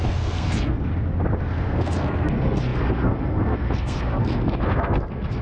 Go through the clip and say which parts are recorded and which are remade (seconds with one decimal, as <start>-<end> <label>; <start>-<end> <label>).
0.0-0.9 remade; 0.9-1.4 recorded; 1.4-5.4 remade